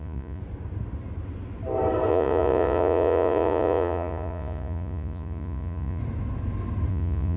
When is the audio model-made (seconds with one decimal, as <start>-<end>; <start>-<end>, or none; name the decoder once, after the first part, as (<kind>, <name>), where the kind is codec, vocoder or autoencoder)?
0.0-0.4 (vocoder, Vocos); 2.1-6.0; 6.9-7.4